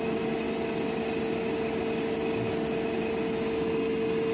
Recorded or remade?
recorded